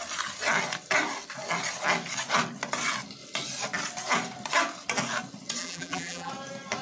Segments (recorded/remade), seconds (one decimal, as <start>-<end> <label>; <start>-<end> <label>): 0.0-5.6 recorded; 5.6-6.3 remade; 6.3-6.8 recorded